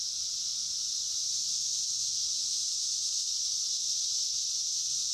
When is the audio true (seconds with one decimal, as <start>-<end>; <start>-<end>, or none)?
0.0-3.7; 4.3-5.1

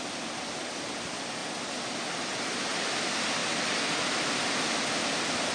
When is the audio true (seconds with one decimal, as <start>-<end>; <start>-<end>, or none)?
1.4-2.6; 3.4-4.4